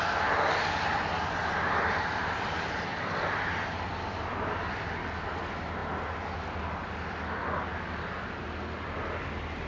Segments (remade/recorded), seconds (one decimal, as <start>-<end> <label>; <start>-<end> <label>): 0.0-9.7 recorded